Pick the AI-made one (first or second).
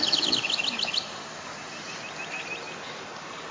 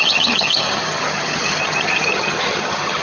second